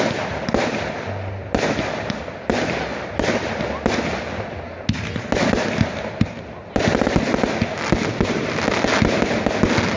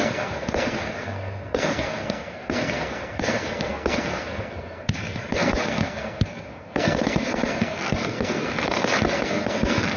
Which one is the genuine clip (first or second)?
first